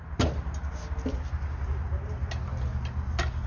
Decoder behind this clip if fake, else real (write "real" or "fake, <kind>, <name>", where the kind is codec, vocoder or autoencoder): real